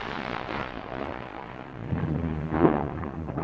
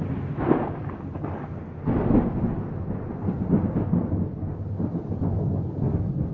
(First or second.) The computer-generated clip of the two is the first